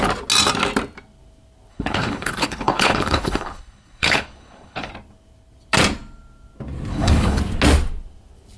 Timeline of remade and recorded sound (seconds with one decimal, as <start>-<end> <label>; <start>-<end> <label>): 0.0-1.7 recorded; 1.7-4.9 remade; 4.9-6.9 recorded; 6.9-7.4 remade; 7.4-8.6 recorded